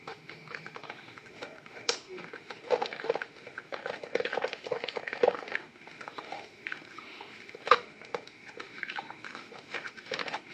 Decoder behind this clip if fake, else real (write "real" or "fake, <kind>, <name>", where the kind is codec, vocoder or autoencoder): fake, autoencoder, DAC-VAE